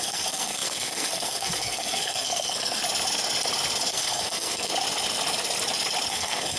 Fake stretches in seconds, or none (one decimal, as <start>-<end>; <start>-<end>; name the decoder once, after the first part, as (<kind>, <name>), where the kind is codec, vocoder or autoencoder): 0.0-2.8 (codec, SNAC); 3.9-4.7; 6.1-6.6